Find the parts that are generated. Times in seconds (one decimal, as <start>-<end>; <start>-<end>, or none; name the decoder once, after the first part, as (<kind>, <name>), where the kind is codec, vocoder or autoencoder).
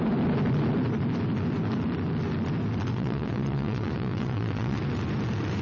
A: 2.9-4.8 (vocoder, WaveNeXt)